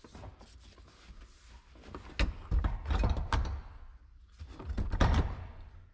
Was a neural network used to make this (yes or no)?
no